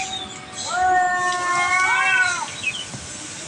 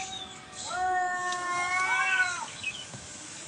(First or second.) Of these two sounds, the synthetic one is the second